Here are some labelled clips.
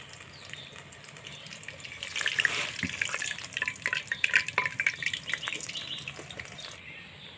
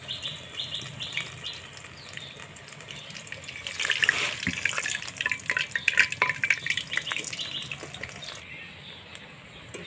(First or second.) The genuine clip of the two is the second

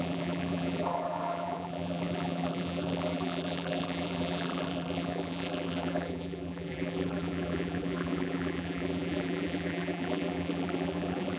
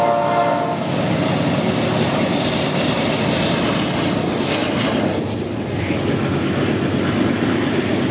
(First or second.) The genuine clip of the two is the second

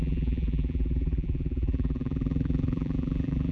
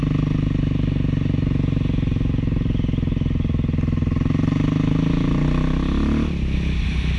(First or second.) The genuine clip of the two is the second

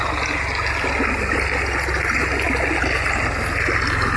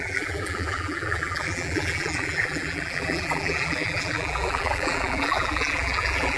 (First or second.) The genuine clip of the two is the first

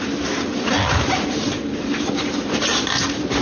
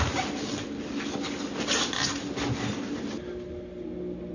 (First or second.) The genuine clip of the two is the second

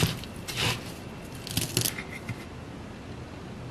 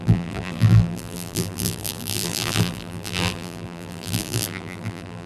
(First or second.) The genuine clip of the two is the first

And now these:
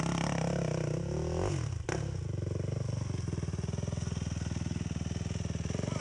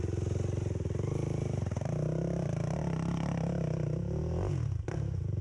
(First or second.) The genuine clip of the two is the first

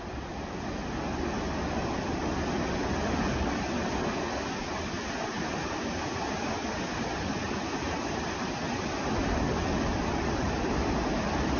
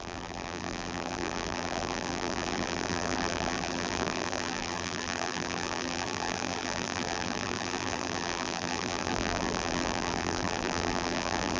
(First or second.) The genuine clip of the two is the first